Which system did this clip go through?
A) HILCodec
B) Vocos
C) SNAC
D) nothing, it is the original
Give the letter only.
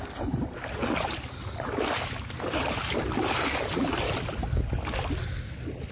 D